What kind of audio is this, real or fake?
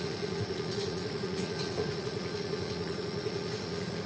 fake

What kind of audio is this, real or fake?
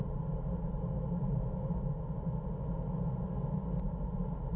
real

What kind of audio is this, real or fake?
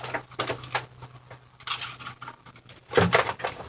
real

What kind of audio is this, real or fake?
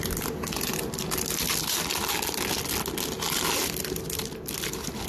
real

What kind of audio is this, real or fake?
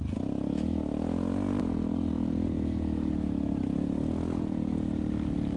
real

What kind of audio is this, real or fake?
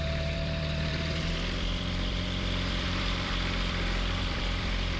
fake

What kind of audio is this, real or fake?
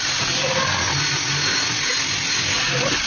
real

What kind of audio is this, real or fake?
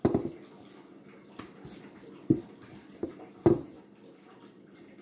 real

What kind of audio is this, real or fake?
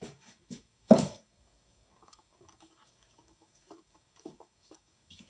fake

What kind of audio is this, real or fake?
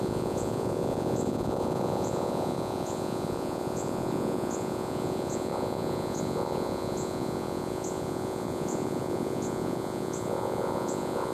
fake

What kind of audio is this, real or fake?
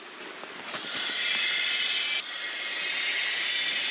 real